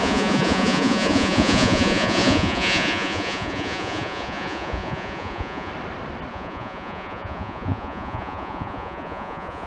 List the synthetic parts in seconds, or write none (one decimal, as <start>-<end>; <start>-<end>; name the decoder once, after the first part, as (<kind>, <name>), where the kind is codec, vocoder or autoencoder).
0.0-5.7 (vocoder, Vocos); 6.3-9.7